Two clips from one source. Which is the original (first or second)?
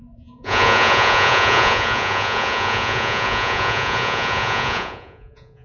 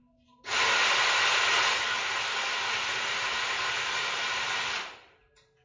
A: second